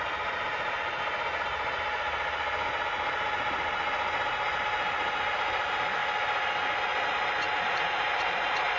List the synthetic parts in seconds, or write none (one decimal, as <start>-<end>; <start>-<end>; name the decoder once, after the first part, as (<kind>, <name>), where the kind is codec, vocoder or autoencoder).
0.0-6.0 (vocoder, BigVGAN v2); 7.5-8.8